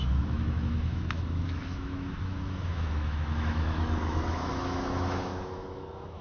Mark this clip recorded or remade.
remade